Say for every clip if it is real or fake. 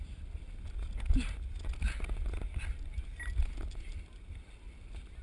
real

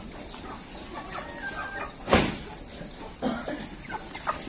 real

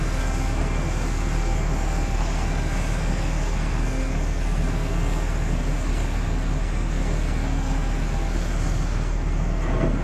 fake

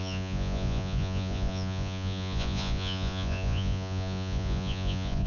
fake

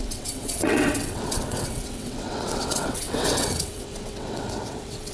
fake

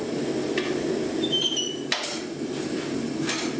real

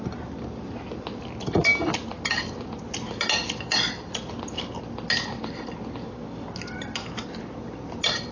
real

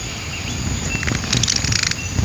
real